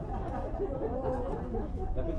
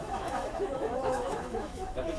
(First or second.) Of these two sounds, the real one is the first